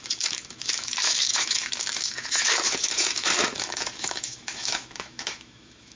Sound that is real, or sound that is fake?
fake